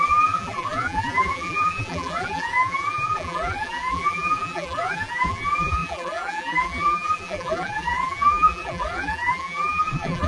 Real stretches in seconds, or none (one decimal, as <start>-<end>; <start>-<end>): none